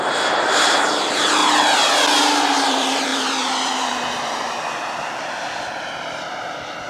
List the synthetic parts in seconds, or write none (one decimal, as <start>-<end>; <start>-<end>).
0.0-1.4; 2.2-6.9